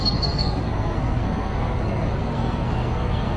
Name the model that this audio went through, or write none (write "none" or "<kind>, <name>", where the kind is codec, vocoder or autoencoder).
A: codec, SNAC